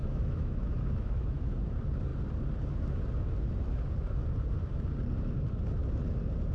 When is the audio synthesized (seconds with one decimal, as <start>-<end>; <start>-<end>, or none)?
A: 0.0-1.5